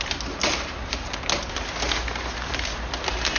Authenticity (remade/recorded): recorded